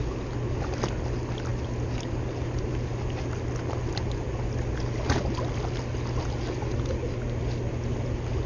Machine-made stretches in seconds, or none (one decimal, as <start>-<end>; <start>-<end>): none